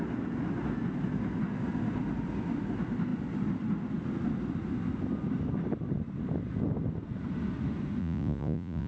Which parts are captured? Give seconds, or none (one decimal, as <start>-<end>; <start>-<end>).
0.0-8.0